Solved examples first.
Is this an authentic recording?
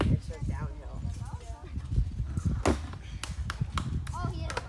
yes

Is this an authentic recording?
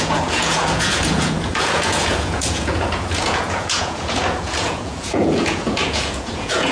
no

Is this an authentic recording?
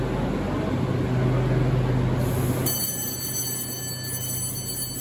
yes